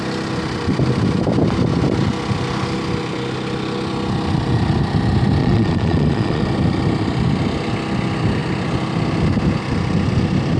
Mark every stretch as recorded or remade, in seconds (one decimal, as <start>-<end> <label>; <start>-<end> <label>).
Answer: 0.0-5.4 recorded; 5.4-6.4 remade; 6.4-10.6 recorded